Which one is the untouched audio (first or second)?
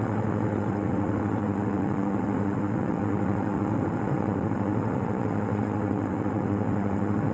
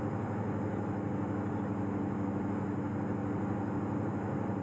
second